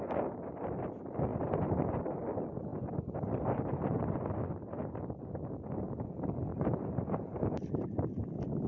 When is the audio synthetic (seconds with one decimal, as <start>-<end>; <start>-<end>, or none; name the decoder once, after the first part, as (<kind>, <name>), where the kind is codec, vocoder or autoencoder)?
1.3-2.0 (vocoder, BigVGAN v2); 6.5-8.0